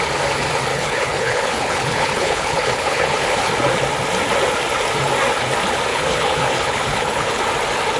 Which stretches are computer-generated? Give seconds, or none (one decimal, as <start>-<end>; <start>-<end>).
0.7-3.5; 5.9-7.4

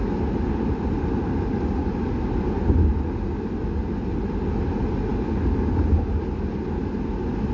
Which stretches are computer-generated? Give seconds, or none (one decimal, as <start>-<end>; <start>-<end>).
none

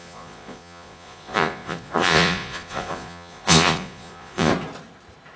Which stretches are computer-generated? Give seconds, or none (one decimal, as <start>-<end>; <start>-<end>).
0.0-4.5